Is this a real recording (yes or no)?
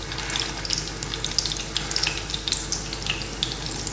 yes